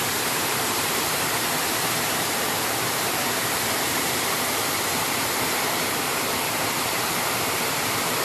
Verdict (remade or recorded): remade